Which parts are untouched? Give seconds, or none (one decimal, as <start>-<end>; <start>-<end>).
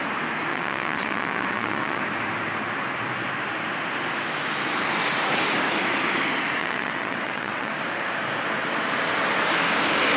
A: 0.0-0.5; 2.0-6.6; 7.7-10.2